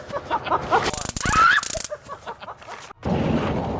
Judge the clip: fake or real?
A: real